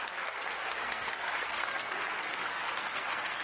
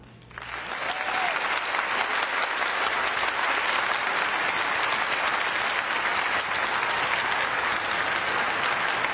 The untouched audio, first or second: second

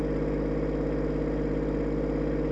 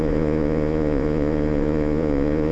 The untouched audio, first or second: first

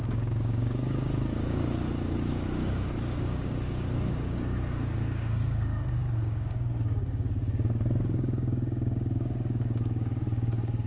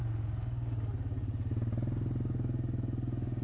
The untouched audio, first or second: second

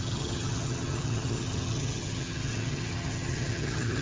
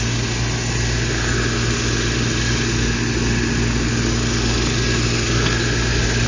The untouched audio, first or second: second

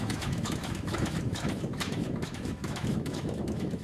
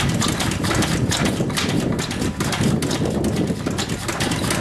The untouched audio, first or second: second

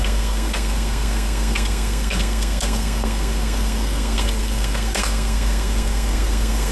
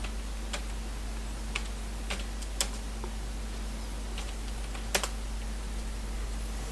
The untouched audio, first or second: second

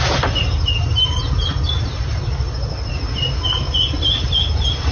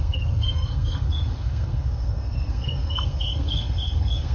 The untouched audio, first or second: first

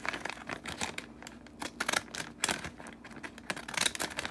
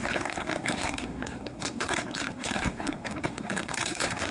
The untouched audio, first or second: first